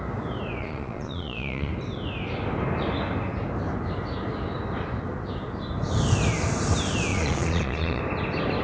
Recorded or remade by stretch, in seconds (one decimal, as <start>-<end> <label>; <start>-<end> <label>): 0.0-0.6 recorded; 0.6-1.7 remade; 1.7-7.1 recorded; 7.1-8.0 remade; 8.0-8.6 recorded